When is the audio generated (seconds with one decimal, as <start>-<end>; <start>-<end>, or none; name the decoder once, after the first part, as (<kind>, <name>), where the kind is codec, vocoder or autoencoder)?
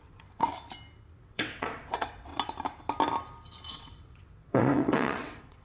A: 0.0-0.5 (vocoder, WaveNeXt); 1.2-2.3; 3.7-5.6